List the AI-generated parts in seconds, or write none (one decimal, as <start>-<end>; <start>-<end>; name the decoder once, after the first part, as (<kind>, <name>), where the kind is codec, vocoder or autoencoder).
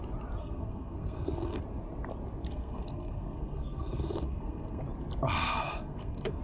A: 0.4-1.6 (codec, SNAC); 2.5-4.8; 5.4-6.4